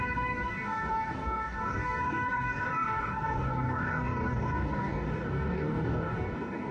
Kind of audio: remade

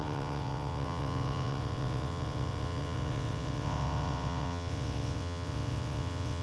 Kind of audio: remade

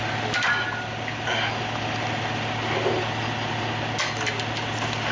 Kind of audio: recorded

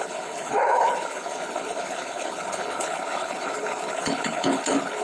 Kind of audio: remade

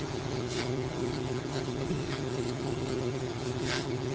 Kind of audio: remade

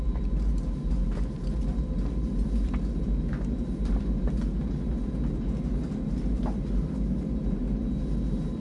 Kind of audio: recorded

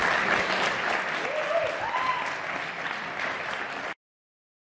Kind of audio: recorded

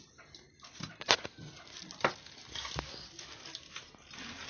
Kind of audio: recorded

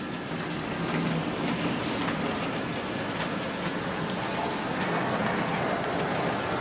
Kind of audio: recorded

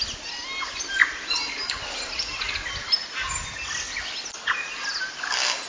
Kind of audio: recorded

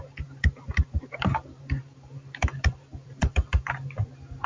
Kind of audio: remade